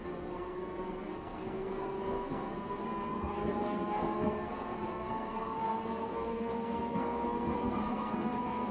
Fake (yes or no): yes